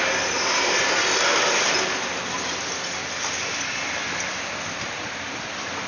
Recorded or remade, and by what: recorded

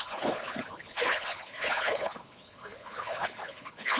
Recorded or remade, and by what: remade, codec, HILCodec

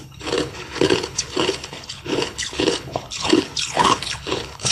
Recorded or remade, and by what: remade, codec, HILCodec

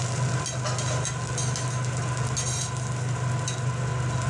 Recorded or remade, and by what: recorded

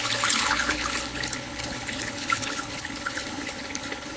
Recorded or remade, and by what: remade, codec, HILCodec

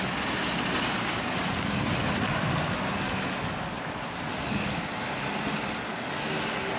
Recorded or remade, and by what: recorded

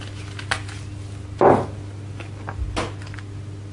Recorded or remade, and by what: recorded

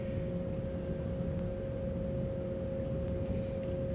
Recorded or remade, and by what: recorded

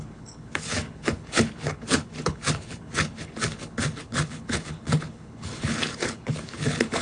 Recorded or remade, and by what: remade, codec, HILCodec